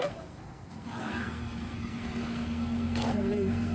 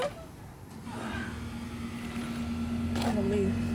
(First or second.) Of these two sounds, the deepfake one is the first